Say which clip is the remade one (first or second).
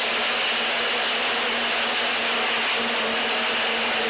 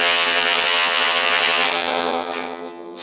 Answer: second